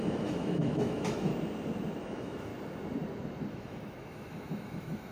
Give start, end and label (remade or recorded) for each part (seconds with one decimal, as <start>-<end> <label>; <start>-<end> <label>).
0.0-1.3 remade; 1.3-2.0 recorded; 2.0-2.5 remade; 2.5-3.5 recorded; 3.5-5.1 remade